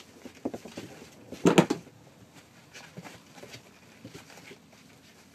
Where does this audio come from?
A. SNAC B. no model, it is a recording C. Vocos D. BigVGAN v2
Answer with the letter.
B